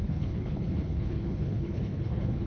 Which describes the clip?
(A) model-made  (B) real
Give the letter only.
A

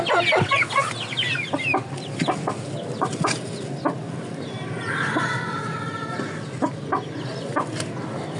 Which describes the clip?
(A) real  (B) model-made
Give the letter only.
A